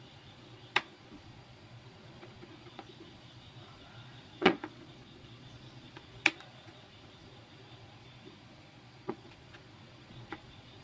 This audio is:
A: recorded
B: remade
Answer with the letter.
B